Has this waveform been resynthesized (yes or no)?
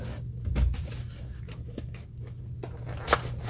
no